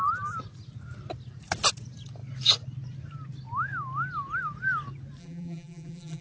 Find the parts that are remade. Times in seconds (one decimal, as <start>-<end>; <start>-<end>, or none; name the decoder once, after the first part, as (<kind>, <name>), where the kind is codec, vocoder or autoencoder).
5.2-6.2 (vocoder, BigVGAN v2)